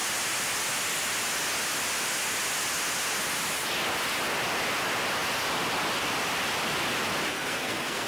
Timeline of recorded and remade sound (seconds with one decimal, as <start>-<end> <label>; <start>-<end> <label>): 0.0-7.3 recorded; 7.3-8.1 remade